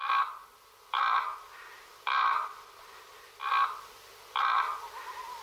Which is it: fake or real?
real